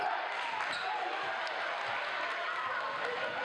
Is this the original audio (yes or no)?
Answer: yes